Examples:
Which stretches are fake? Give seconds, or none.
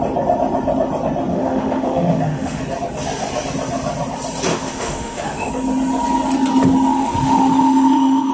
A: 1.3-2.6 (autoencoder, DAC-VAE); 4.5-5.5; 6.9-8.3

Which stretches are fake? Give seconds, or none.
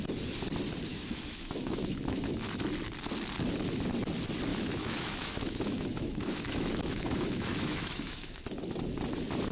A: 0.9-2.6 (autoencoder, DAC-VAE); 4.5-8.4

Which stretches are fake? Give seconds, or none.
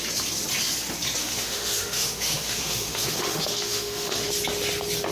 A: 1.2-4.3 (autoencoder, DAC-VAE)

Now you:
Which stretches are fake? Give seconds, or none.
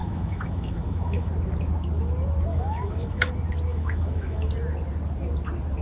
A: 0.0-1.3 (autoencoder, DAC-VAE); 2.5-3.3; 3.7-4.5